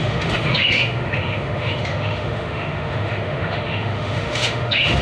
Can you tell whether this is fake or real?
fake